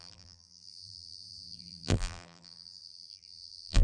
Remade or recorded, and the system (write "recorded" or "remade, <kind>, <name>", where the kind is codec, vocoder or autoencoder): remade, vocoder, BigVGAN v2